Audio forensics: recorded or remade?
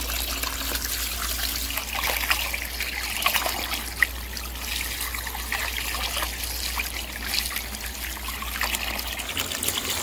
recorded